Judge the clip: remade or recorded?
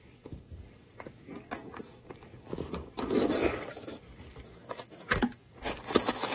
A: remade